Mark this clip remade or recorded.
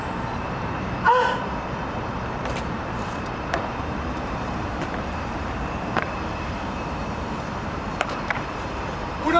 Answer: remade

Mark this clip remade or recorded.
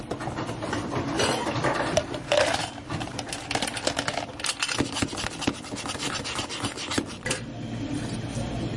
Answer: remade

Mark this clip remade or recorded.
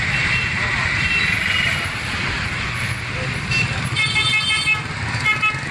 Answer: recorded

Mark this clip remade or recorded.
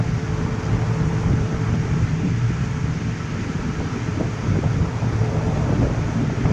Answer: remade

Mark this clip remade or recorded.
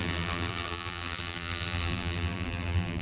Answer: remade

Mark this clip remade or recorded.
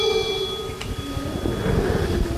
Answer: recorded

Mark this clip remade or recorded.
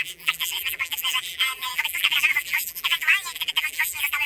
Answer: remade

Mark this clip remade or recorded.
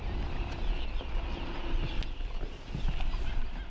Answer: recorded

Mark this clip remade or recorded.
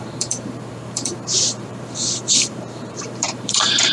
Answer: remade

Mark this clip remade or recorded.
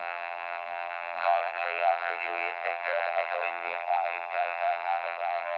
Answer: remade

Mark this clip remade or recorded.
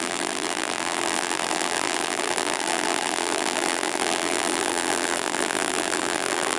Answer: remade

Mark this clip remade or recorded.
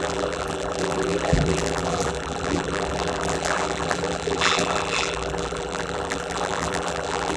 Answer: remade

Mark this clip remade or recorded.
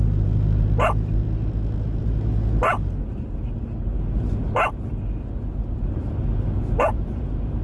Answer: recorded